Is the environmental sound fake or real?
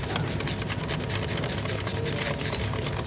real